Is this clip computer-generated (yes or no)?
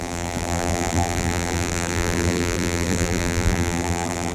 yes